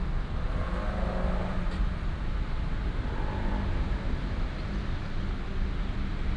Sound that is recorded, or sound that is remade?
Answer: recorded